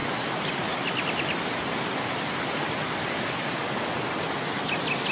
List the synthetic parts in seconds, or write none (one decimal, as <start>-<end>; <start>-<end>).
0.0-3.1